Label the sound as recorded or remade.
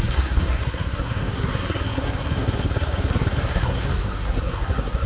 remade